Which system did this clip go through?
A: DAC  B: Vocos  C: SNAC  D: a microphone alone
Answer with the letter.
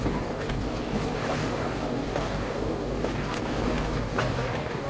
A